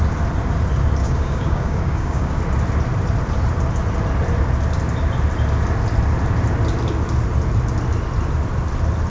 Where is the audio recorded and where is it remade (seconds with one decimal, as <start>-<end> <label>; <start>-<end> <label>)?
0.0-1.0 recorded; 1.0-2.4 remade; 2.4-9.1 recorded